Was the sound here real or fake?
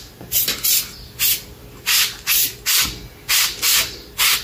real